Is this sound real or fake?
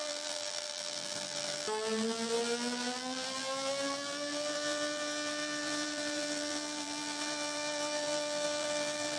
fake